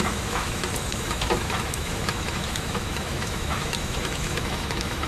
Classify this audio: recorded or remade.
remade